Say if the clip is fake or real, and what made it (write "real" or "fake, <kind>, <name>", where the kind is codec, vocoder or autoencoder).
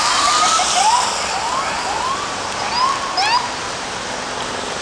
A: real